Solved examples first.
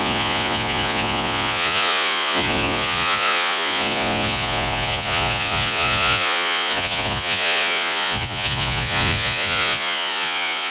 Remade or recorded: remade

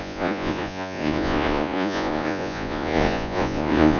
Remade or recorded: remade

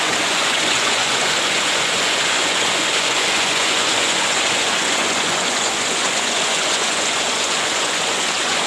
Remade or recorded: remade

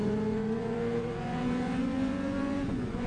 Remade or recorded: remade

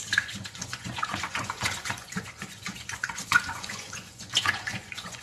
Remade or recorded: remade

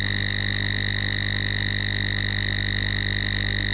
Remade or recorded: recorded